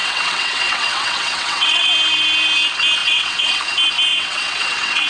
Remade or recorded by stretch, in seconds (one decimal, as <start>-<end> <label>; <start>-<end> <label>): 0.0-1.9 remade; 1.9-3.0 recorded; 3.0-3.6 remade; 3.6-4.1 recorded; 4.1-5.1 remade